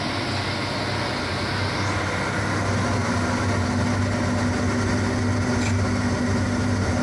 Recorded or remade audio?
recorded